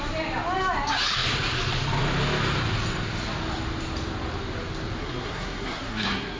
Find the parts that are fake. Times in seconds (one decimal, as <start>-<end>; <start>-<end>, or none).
5.0-6.4